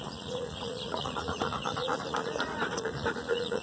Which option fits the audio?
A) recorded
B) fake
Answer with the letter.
B